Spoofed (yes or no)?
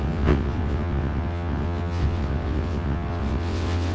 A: yes